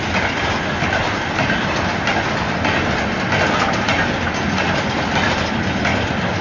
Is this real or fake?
real